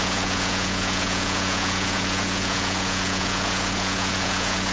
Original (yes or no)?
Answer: no